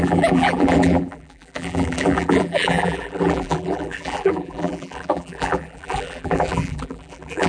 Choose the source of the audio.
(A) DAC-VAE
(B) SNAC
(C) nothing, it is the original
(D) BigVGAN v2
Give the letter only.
D